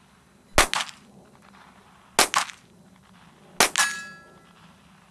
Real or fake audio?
real